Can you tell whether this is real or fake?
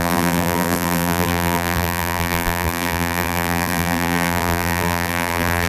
fake